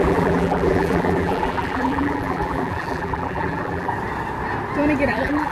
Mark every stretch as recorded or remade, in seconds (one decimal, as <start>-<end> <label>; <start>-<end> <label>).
0.0-3.9 remade; 3.9-5.1 recorded; 5.1-5.5 remade